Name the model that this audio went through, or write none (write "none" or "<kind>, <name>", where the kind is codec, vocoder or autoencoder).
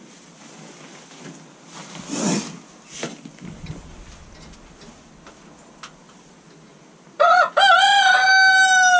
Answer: none